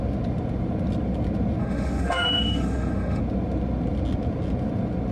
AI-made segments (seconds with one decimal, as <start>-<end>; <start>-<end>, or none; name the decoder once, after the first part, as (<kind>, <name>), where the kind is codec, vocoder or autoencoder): 1.6-3.2 (autoencoder, DAC-VAE)